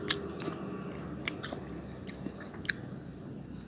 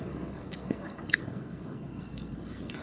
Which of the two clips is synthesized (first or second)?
second